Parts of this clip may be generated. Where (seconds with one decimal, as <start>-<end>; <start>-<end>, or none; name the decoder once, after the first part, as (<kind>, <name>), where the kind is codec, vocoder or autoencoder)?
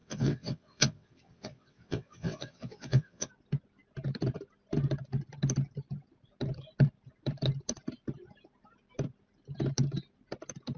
0.0-3.3 (vocoder, WaveNeXt)